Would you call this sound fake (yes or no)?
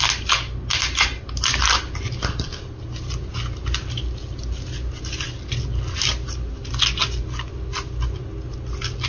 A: no